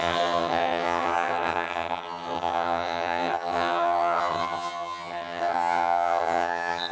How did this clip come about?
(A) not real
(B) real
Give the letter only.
A